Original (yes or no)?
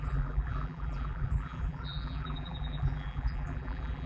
no